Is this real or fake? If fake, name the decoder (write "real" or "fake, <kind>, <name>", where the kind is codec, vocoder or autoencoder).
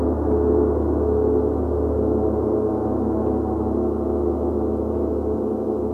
real